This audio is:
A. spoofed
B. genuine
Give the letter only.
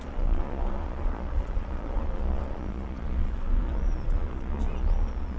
A